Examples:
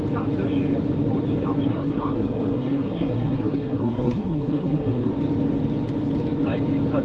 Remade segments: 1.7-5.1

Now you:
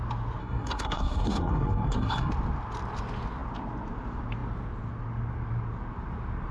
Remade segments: 0.4-2.3

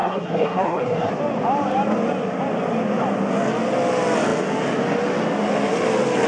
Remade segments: 0.0-1.1

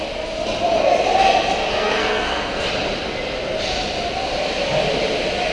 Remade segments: 1.7-2.7

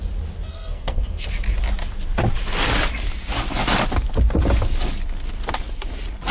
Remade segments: 0.5-1.3

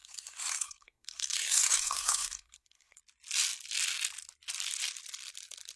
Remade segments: 0.0-3.0